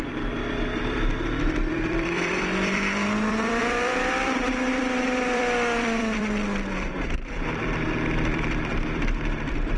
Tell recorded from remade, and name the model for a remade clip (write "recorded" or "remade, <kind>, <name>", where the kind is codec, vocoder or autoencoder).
remade, vocoder, BigVGAN v2